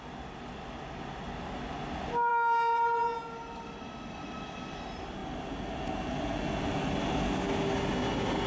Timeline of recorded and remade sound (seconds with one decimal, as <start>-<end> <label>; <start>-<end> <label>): 0.0-8.5 recorded